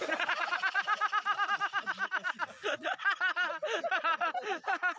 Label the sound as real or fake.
real